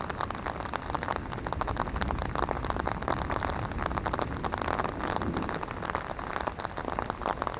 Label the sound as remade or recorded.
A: recorded